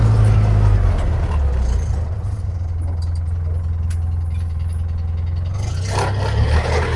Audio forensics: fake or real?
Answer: real